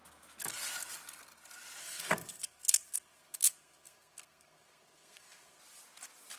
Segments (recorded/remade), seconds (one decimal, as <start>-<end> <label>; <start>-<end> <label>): 0.0-1.8 recorded; 1.8-5.6 remade; 5.6-6.4 recorded